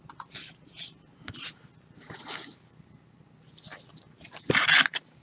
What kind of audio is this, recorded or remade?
recorded